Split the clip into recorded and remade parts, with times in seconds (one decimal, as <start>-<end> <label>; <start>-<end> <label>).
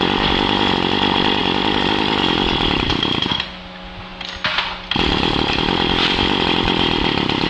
0.0-7.5 recorded